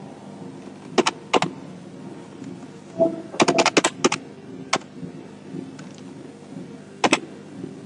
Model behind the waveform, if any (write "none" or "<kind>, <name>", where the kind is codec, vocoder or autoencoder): none